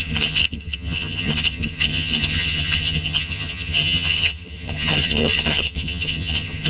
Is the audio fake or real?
fake